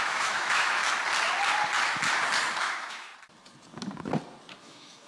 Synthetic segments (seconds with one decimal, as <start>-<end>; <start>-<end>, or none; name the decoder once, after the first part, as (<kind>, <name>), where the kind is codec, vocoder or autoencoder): 0.0-0.8 (autoencoder, DAC-VAE); 2.6-3.1; 4.6-5.1